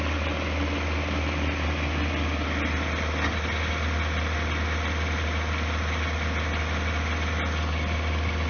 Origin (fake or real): real